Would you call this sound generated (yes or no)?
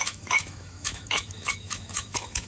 yes